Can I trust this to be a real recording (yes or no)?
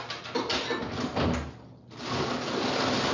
yes